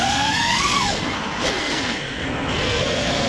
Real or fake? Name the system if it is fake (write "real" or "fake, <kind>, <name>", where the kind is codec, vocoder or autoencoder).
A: fake, codec, SNAC